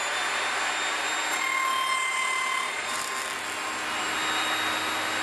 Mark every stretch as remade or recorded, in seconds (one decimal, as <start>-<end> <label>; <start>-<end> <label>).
0.0-2.1 recorded; 2.1-3.1 remade; 3.1-5.2 recorded